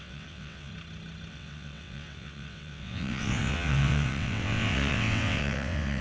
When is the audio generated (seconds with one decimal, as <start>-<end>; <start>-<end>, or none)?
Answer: 0.0-0.7; 1.3-6.0